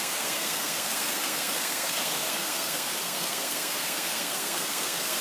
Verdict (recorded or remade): remade